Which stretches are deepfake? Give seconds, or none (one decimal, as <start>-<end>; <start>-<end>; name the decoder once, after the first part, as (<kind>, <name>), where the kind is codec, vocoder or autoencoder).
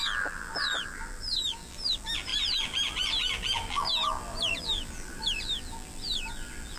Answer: 0.0-6.8 (vocoder, BigVGAN v2)